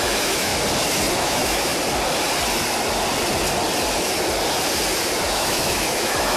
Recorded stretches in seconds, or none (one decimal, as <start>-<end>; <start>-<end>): 0.5-1.1; 1.7-5.3